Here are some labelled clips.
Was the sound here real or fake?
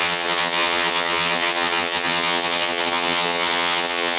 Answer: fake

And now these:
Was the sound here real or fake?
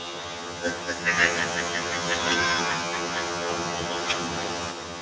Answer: fake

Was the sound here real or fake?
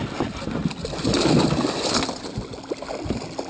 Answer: real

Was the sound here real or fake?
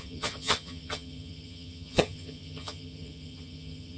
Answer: fake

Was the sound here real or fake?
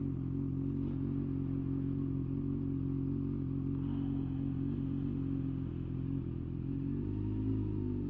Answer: real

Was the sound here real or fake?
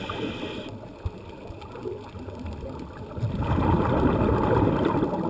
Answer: real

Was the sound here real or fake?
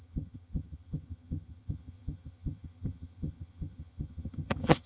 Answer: fake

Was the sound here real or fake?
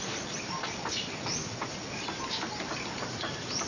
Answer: real